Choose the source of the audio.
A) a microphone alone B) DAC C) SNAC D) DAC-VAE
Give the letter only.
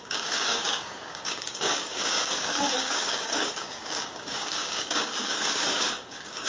B